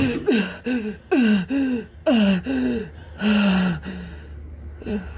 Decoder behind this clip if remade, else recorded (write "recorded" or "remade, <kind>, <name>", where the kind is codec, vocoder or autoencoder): recorded